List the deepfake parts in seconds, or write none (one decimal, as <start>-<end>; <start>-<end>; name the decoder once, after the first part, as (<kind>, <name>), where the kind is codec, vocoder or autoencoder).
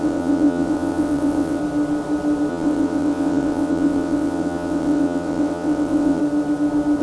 0.0-1.6 (vocoder, WaveNeXt); 2.5-6.2